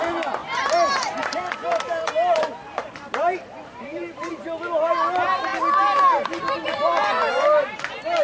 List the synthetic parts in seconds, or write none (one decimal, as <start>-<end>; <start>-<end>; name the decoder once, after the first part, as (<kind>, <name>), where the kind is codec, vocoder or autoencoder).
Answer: 0.4-4.3 (vocoder, BigVGAN v2); 5.5-6.4